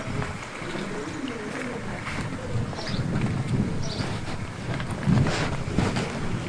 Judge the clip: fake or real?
real